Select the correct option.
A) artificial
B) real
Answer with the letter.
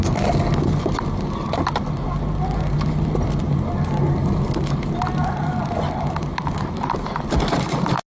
B